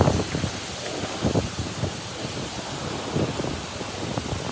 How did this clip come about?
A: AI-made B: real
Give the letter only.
B